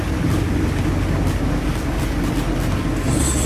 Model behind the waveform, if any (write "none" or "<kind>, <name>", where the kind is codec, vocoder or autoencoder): none